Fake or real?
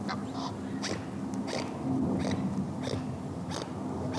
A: real